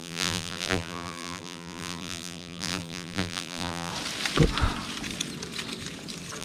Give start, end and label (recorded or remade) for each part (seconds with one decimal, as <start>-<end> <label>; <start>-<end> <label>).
0.0-3.9 remade; 3.9-6.4 recorded